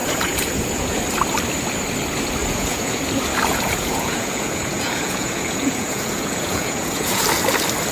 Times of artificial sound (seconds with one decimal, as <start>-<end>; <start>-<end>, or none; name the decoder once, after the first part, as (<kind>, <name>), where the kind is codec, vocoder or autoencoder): 0.0-1.0 (vocoder, Vocos); 2.4-3.0; 3.5-7.2